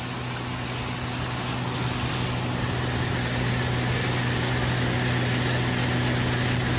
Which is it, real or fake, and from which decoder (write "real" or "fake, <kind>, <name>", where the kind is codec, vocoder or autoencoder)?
real